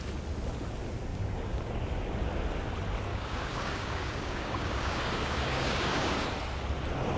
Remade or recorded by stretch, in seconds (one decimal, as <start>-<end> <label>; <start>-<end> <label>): 0.0-1.1 recorded; 1.1-1.7 remade; 1.7-3.1 recorded; 3.1-6.3 remade; 6.3-7.2 recorded